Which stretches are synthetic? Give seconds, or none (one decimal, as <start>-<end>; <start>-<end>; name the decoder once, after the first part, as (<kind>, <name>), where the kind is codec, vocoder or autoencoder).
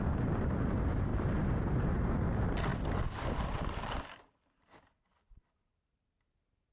0.0-2.7 (vocoder, BigVGAN v2); 4.0-6.7